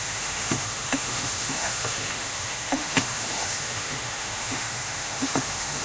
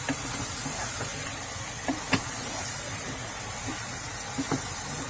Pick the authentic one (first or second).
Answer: second